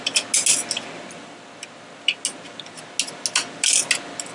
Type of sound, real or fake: real